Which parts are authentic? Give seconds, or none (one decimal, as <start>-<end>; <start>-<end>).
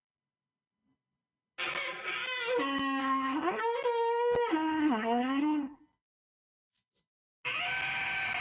0.0-3.0; 3.6-4.5; 5.8-8.4